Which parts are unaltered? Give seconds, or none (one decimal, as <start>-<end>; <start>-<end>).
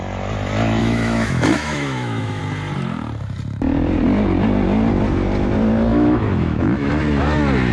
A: 0.0-0.8; 2.4-5.9; 6.9-7.7